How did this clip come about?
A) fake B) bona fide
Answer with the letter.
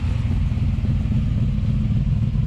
B